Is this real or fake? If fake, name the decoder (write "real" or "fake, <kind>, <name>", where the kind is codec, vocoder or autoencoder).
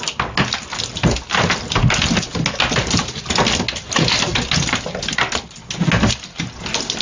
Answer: real